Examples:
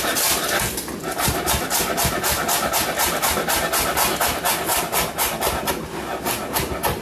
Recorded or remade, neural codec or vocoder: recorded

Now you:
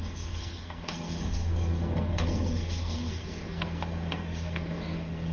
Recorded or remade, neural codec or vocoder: remade, codec, SNAC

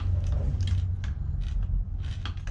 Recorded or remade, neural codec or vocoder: recorded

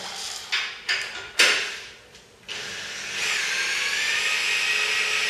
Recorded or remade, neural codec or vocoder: recorded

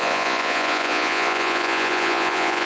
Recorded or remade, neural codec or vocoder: remade, vocoder, Vocos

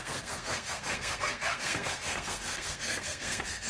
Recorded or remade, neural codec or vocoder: remade, codec, SNAC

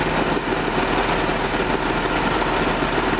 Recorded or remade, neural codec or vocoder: recorded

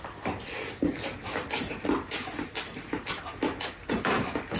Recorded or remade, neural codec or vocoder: recorded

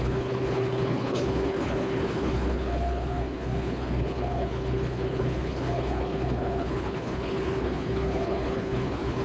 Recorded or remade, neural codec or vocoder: remade, codec, HILCodec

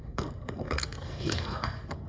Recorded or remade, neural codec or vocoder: remade, codec, SNAC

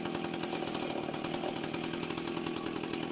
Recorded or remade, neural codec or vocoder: recorded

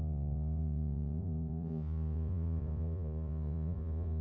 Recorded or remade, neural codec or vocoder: remade, vocoder, Vocos